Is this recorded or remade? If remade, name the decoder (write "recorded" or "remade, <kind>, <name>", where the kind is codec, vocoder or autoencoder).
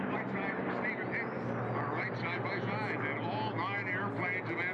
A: recorded